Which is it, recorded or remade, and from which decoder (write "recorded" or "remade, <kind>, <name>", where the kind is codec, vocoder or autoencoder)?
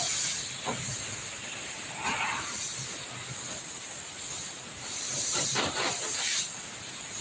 recorded